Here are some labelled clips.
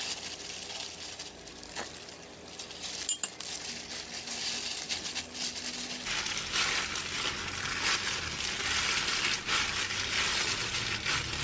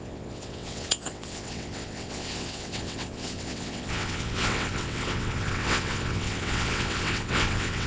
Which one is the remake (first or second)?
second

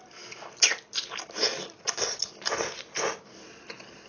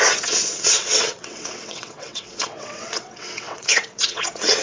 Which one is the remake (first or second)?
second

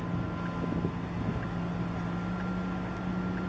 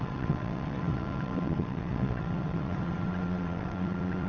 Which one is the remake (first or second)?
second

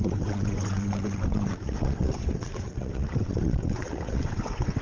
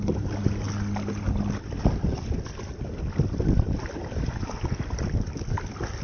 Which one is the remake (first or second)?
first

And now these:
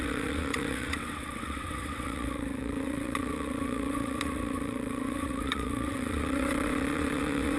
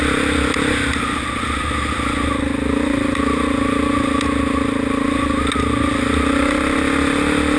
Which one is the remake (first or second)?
first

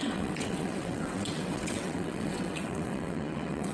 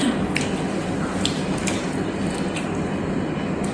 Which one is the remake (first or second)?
first